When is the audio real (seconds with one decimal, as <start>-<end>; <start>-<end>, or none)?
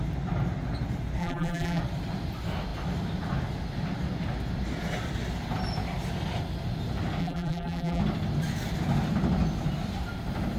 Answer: 0.0-1.2; 1.8-7.2; 8.0-10.6